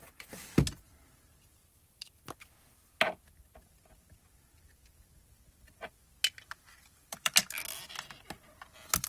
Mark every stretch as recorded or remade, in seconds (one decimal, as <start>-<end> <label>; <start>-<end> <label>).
0.0-6.7 recorded; 6.7-7.3 remade; 7.3-9.1 recorded